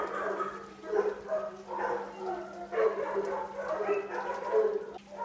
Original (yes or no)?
yes